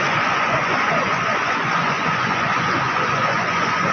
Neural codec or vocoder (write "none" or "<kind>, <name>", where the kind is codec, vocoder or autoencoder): vocoder, Vocos